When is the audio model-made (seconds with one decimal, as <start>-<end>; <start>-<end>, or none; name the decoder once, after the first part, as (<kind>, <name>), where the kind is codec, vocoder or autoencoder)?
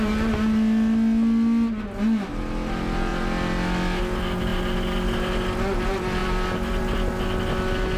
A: none